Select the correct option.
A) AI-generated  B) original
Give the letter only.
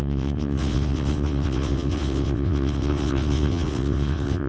A